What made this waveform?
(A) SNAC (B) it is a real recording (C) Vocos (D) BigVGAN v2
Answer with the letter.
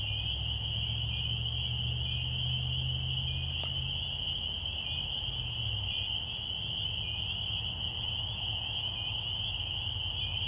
B